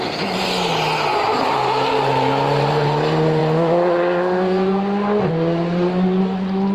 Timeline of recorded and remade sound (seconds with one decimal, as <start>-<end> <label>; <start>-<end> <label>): 0.0-6.7 recorded